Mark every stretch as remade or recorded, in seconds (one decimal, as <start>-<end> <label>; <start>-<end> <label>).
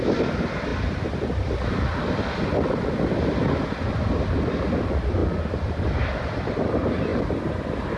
0.0-5.2 remade; 5.2-6.1 recorded; 6.1-8.0 remade